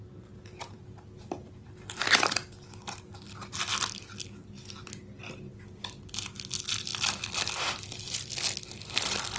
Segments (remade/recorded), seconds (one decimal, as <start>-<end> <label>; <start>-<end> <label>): 0.0-9.4 recorded